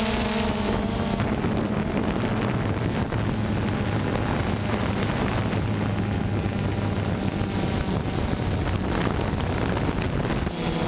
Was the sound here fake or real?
real